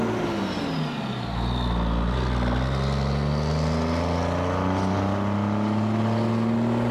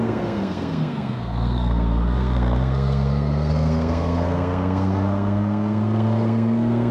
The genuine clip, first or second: first